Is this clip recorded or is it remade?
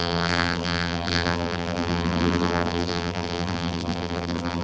remade